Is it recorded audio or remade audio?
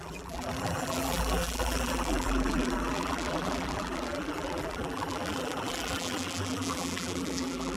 remade